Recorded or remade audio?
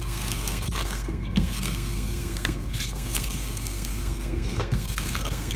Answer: remade